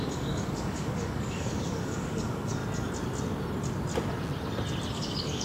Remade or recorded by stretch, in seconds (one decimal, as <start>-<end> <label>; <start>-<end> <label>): 0.0-2.6 remade; 2.6-4.9 recorded; 4.9-5.4 remade